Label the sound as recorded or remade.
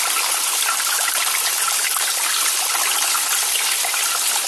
recorded